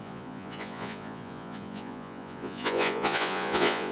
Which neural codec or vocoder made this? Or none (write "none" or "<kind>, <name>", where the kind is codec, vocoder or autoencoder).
vocoder, Vocos